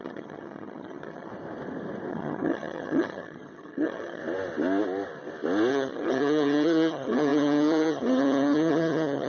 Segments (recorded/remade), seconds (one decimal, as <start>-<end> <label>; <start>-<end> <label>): 0.0-1.3 remade; 1.3-2.1 recorded; 2.1-4.2 remade; 4.2-5.7 recorded; 5.7-9.3 remade